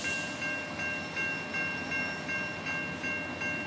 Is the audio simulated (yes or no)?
no